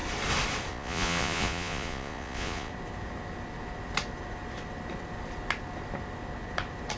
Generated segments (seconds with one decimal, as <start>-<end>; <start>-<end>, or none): 0.7-2.7